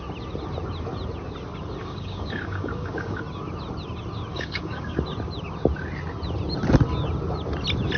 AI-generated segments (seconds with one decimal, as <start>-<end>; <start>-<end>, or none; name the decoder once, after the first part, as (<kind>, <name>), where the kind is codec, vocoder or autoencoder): 1.8-3.2 (codec, DAC); 4.3-5.0